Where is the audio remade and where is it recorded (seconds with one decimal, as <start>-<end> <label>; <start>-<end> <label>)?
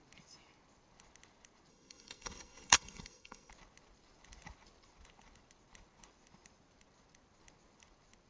0.0-1.7 recorded; 1.7-3.5 remade; 3.5-8.3 recorded